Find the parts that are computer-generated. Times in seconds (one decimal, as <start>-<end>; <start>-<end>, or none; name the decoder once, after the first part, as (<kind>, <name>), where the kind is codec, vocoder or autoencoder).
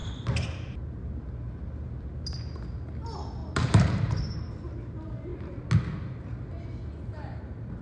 3.4-4.4 (vocoder, BigVGAN v2)